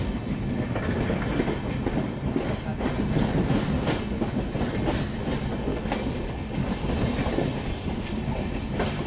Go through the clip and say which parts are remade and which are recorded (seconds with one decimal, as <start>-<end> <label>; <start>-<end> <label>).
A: 0.0-5.7 recorded; 5.7-6.9 remade; 6.9-9.1 recorded